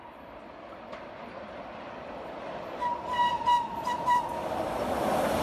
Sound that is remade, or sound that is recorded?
remade